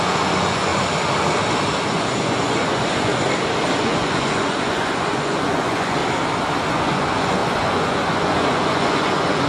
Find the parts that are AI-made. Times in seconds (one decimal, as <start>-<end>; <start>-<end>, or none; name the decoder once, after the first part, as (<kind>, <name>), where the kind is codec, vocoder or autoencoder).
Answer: 0.0-0.7 (vocoder, Vocos); 1.9-3.1; 3.8-6.0; 6.7-9.5